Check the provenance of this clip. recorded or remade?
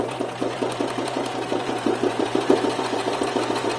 remade